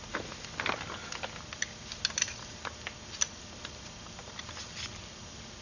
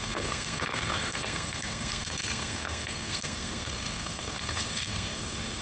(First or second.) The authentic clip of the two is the first